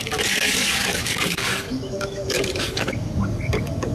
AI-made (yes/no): yes